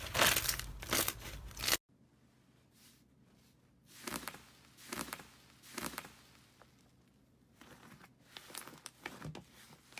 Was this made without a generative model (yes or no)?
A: yes